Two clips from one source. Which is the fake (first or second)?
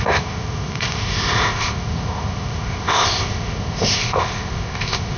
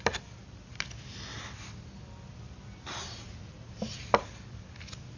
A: first